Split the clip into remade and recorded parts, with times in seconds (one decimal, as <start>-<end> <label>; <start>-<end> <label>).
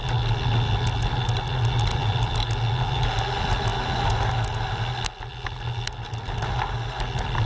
0.0-7.5 recorded